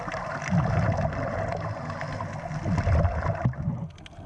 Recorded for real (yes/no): yes